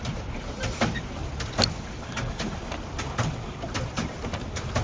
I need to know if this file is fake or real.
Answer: real